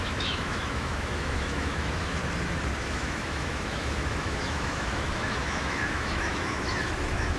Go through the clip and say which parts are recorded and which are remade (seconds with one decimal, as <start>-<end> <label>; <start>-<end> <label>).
0.0-2.2 remade; 2.2-2.8 recorded; 2.8-7.4 remade